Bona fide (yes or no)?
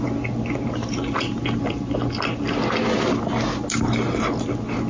yes